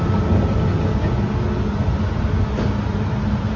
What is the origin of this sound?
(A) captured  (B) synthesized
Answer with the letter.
A